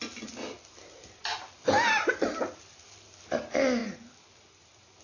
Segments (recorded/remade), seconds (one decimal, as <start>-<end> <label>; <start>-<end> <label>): 0.0-5.0 recorded